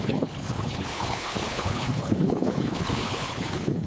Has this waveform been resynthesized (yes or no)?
yes